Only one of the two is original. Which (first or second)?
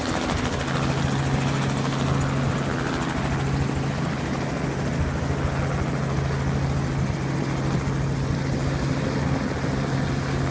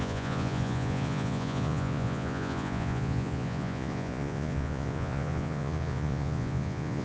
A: first